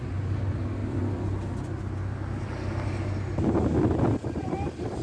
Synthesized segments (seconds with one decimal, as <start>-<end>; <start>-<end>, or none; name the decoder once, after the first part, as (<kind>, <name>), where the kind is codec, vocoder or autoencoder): none